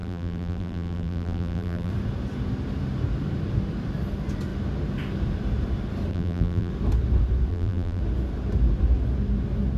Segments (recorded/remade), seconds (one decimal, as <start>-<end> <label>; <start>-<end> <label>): 0.0-1.9 remade; 1.9-6.1 recorded; 6.1-6.7 remade; 6.7-7.5 recorded; 7.5-8.0 remade; 8.0-9.8 recorded